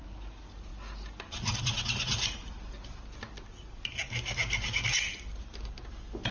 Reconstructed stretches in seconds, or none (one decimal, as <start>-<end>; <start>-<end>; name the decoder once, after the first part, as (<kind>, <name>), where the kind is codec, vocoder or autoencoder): none